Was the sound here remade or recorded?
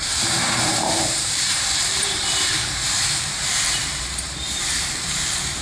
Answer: remade